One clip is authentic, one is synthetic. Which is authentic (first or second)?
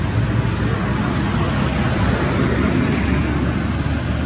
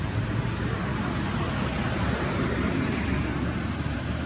first